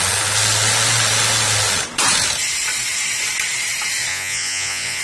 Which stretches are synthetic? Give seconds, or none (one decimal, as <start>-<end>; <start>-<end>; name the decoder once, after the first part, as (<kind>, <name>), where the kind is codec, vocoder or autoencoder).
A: 4.1-5.0 (vocoder, Vocos)